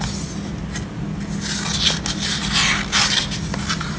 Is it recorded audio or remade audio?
recorded